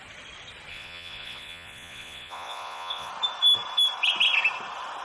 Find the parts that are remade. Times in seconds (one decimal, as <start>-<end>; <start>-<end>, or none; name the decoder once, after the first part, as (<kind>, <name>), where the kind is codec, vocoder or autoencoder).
0.7-3.1 (vocoder, Vocos)